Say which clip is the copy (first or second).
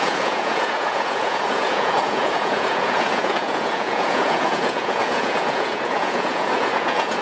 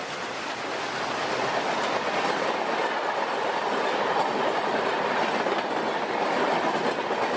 first